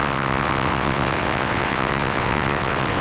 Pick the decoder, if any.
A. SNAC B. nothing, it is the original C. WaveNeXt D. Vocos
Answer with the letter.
C